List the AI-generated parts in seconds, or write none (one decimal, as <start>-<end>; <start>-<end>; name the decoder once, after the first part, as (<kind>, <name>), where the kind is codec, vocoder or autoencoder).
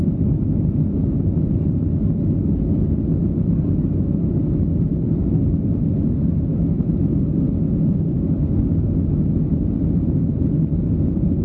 none